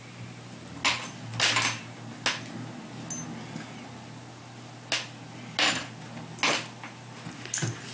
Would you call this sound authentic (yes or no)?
yes